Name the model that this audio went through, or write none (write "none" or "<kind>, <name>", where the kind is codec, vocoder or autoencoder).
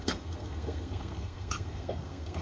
codec, SNAC